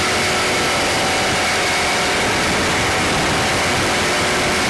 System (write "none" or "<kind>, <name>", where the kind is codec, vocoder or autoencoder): none